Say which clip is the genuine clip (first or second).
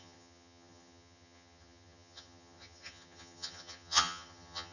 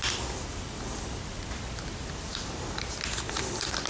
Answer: second